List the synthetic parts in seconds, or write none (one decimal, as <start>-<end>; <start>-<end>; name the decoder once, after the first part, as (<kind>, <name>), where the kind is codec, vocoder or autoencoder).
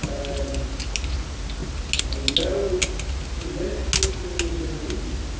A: none